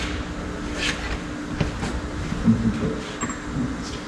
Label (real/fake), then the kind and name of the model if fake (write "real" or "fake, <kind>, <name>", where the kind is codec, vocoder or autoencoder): real